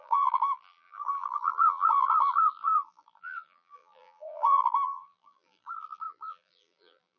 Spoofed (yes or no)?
yes